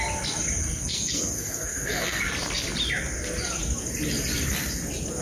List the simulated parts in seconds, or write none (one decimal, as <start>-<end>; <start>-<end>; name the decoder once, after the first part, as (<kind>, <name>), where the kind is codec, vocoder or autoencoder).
0.6-2.2 (codec, SNAC)